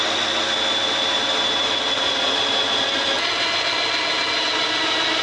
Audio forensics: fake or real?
real